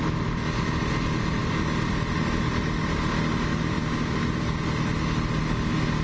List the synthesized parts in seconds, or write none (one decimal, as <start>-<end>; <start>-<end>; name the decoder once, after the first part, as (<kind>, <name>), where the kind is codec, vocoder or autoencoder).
none